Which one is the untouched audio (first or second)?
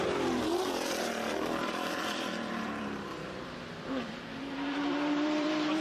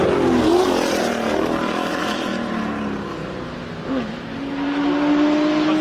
second